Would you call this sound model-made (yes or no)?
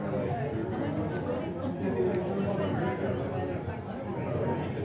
no